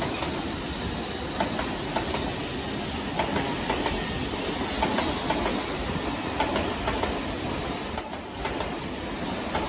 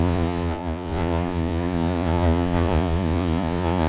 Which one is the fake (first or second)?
second